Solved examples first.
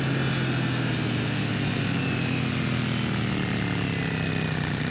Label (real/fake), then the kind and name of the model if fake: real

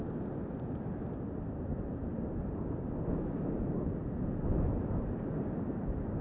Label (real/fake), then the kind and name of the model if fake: real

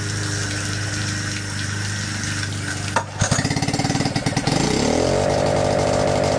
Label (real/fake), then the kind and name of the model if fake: real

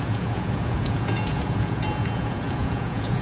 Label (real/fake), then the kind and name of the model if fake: fake, vocoder, Vocos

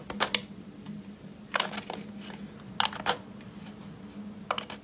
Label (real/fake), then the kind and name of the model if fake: real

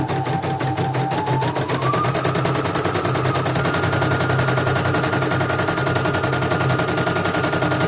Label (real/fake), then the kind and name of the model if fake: real